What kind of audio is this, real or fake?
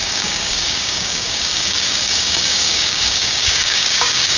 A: fake